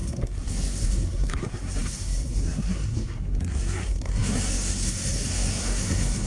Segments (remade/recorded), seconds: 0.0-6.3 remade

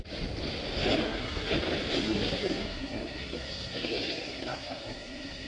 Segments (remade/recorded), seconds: 0.0-1.0 recorded; 1.0-1.5 remade; 1.5-2.0 recorded; 2.0-5.5 remade

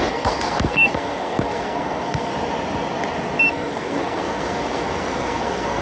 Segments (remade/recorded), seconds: 0.0-2.3 remade; 2.3-3.5 recorded; 3.5-5.8 remade

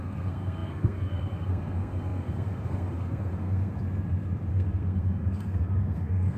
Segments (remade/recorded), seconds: 0.0-3.8 remade; 3.8-4.5 recorded; 4.5-6.4 remade

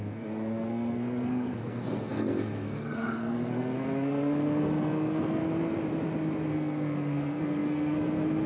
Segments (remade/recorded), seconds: 0.0-5.4 remade; 5.4-6.5 recorded; 6.5-8.5 remade

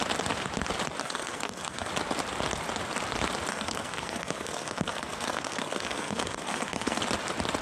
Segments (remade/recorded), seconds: 0.0-1.0 recorded; 1.0-1.9 remade; 1.9-3.5 recorded; 3.5-7.0 remade; 7.0-7.6 recorded

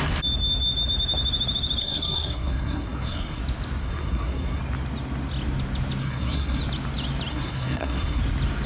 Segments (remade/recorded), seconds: 0.0-1.8 recorded; 1.8-3.4 remade; 3.4-3.8 recorded; 3.8-4.6 remade; 4.6-6.0 recorded; 6.0-6.6 remade; 6.6-7.3 recorded; 7.3-8.2 remade; 8.2-8.7 recorded

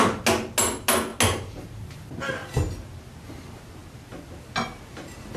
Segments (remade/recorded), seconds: 0.0-5.4 recorded